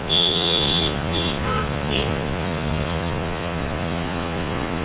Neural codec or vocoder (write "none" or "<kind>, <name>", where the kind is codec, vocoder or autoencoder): vocoder, Vocos